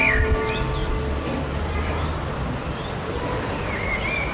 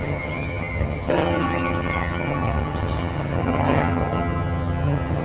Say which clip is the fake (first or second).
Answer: second